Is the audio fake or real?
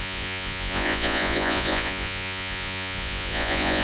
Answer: fake